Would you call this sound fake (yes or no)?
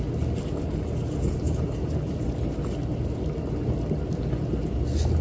no